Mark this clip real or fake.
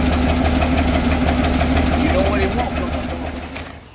real